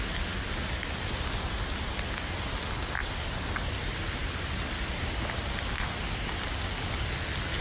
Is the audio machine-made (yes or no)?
no